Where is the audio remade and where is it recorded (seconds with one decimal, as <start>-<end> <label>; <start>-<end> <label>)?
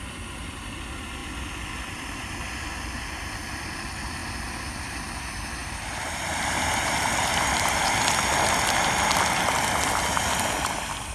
0.0-1.2 recorded; 1.2-2.1 remade; 2.1-5.6 recorded; 5.6-8.9 remade; 8.9-11.1 recorded